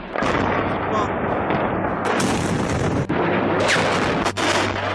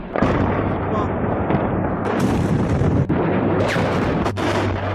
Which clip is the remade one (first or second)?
second